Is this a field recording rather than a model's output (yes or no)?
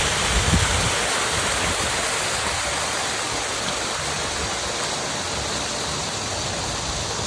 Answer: yes